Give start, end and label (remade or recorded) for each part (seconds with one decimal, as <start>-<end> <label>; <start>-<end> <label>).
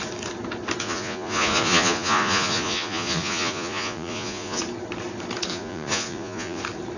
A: 0.0-0.8 recorded; 0.8-4.6 remade; 4.6-5.5 recorded; 5.5-6.6 remade; 6.6-7.0 recorded